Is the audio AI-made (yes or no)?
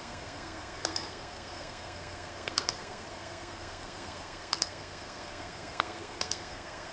yes